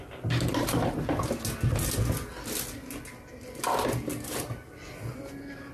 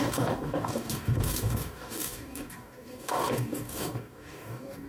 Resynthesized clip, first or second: second